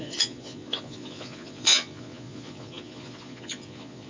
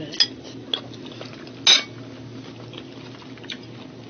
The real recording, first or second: second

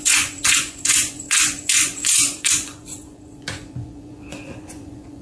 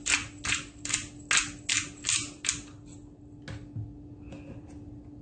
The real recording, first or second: second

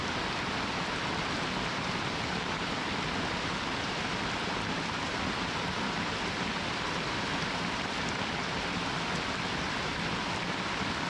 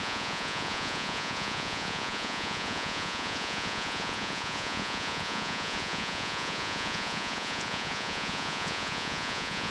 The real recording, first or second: first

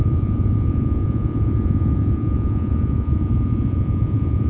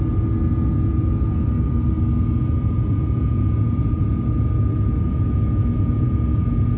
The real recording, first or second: second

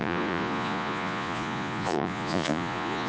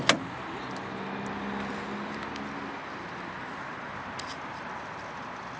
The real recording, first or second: second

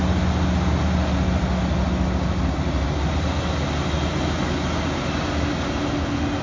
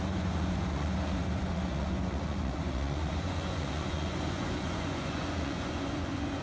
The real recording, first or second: first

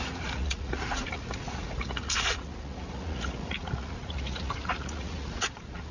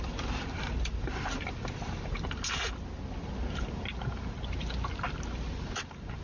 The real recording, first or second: second